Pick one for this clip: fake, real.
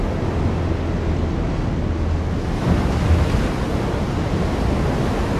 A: real